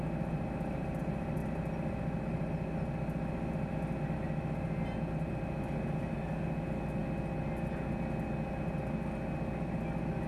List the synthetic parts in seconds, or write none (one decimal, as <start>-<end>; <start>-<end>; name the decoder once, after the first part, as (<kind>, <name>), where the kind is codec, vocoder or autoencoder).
none